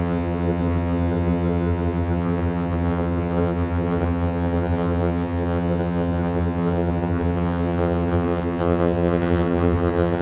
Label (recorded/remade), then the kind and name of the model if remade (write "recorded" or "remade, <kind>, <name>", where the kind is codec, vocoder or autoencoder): remade, vocoder, HiFi-GAN